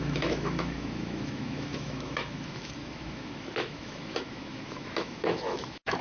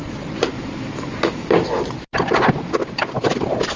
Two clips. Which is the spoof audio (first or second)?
first